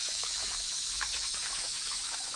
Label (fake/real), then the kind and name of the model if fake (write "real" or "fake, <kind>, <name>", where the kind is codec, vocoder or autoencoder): fake, autoencoder, DAC-VAE